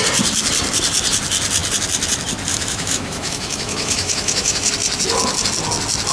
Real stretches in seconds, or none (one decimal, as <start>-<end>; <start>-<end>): 0.0-2.5; 4.7-6.1